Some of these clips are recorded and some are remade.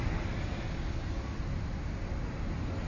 recorded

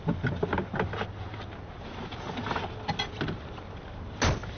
recorded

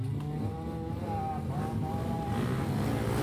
recorded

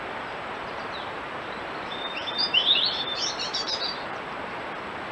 remade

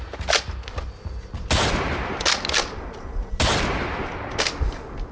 recorded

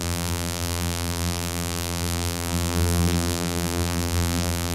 remade